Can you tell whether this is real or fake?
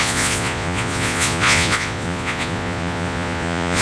fake